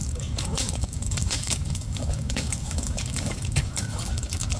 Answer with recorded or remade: remade